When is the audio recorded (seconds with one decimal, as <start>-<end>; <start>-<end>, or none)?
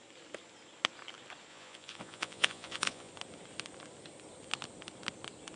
0.0-1.5; 3.1-5.6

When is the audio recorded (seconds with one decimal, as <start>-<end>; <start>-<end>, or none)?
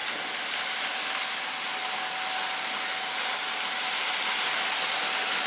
0.0-5.5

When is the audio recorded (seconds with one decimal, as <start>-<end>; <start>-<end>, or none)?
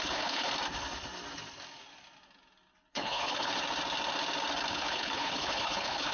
0.5-2.9; 3.5-4.7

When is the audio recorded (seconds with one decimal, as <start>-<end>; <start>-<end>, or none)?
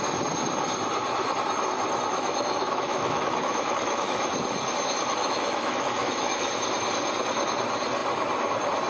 0.0-2.1; 4.3-5.2; 6.5-8.9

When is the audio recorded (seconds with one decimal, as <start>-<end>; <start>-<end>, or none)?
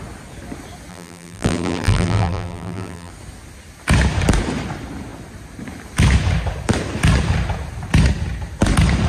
0.0-0.9; 3.1-9.1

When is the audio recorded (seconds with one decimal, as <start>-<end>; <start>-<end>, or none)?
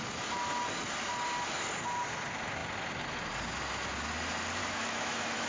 0.0-4.6